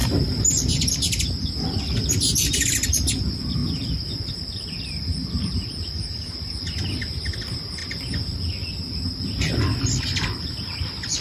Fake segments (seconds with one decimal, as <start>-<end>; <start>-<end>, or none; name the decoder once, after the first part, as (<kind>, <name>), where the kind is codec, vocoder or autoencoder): none